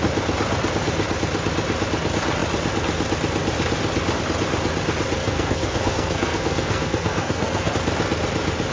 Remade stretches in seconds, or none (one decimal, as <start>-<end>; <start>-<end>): 5.2-7.7